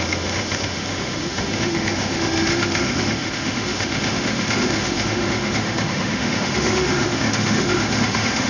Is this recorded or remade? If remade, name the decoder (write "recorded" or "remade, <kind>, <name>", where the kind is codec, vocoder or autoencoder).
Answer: remade, autoencoder, DAC-VAE